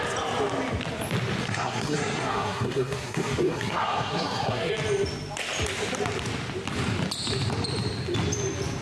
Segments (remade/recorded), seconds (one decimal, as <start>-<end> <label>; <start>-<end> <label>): 0.0-1.4 recorded; 1.4-4.7 remade; 4.7-8.8 recorded